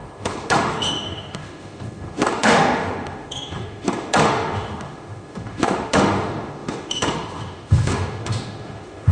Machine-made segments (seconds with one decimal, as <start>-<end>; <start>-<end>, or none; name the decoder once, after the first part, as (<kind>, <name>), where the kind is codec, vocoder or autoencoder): 0.0-9.1 (autoencoder, DAC-VAE)

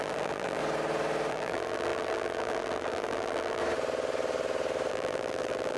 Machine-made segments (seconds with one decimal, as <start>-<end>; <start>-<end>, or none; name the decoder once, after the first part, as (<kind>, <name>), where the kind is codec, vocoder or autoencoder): 0.0-0.6 (vocoder, BigVGAN v2); 1.3-3.6; 4.9-5.8

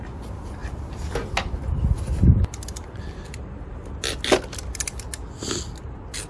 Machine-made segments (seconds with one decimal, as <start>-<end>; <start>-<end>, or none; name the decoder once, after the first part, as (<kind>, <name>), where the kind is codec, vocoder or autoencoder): none

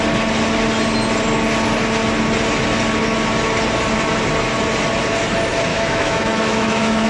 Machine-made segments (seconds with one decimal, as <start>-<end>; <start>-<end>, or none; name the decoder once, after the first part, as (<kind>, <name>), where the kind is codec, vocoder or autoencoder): 5.7-7.1 (autoencoder, DAC-VAE)

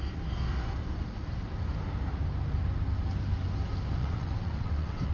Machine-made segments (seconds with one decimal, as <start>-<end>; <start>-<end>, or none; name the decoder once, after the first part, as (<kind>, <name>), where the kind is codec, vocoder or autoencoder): 4.0-5.1 (vocoder, WaveNeXt)

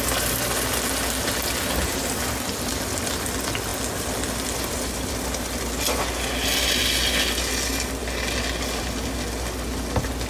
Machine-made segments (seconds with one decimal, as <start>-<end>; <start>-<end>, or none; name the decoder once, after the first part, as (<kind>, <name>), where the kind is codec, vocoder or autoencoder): none

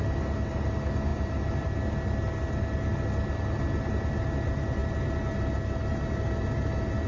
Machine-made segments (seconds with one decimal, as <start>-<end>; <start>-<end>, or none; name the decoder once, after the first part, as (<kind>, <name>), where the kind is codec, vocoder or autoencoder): none